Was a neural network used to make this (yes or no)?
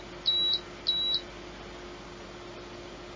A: no